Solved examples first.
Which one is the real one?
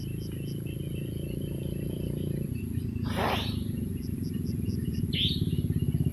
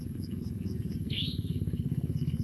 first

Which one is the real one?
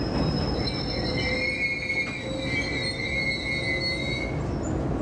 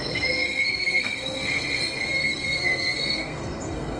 first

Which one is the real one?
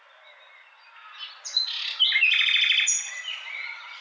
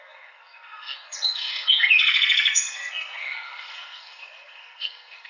first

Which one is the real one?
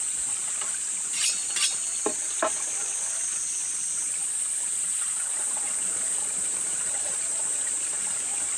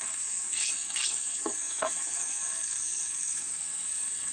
first